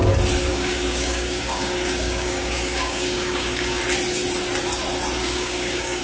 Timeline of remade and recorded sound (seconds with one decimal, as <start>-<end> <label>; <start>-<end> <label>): 0.0-0.5 recorded; 0.5-3.8 remade; 3.8-5.2 recorded; 5.2-6.0 remade